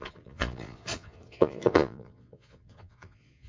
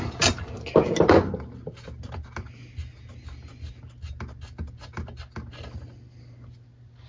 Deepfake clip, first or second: first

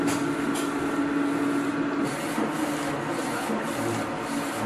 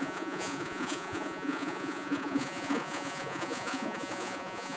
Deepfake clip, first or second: second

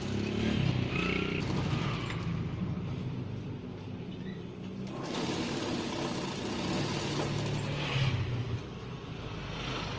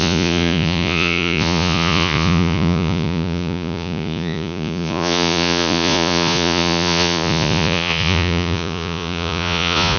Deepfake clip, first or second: second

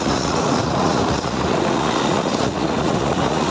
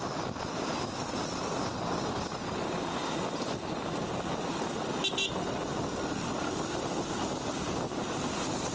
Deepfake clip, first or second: first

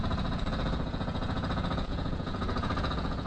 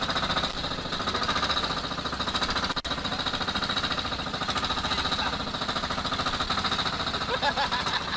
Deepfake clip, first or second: first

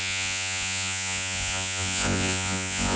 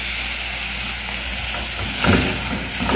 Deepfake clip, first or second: first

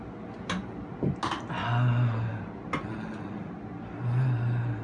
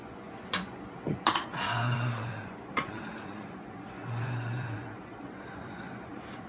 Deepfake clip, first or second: second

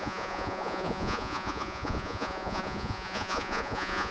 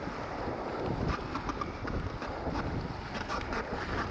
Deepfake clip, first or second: first